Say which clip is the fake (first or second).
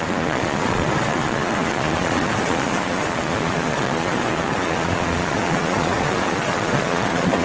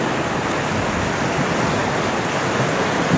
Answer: first